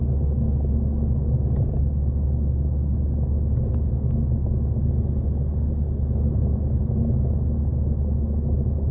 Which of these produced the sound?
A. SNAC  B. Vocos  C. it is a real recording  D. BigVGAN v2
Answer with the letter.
C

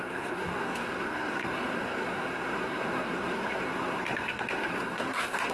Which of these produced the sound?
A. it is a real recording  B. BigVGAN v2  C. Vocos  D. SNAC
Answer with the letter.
D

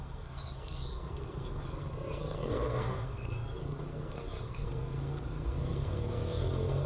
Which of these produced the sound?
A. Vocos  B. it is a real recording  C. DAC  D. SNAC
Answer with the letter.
D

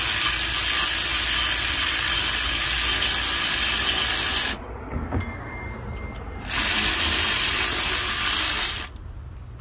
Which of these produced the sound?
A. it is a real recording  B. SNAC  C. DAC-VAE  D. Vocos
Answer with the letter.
A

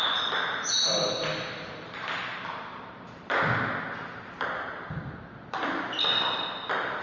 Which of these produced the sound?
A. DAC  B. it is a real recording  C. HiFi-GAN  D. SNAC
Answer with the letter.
B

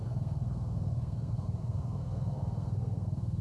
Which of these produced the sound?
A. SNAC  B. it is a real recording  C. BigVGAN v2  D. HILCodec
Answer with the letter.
A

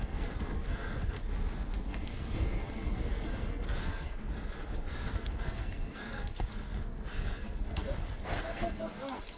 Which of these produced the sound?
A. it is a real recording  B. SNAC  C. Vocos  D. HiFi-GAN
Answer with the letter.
B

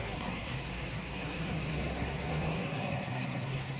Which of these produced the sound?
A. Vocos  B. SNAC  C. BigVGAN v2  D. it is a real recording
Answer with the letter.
B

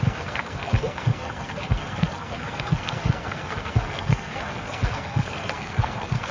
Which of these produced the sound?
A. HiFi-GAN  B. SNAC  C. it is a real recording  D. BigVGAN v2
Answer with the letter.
B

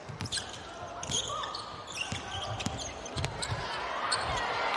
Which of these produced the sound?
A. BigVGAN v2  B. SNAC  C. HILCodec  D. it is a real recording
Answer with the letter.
D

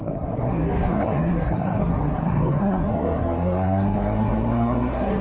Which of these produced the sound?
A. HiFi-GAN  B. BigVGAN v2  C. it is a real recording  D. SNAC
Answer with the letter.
D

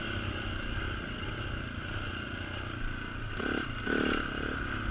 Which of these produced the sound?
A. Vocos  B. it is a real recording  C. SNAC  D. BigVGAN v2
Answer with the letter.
B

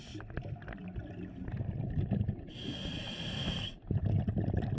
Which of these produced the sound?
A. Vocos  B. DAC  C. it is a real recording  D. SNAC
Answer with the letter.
C